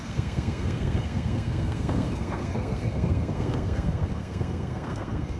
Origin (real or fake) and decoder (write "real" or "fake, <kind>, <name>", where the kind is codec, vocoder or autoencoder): fake, codec, SNAC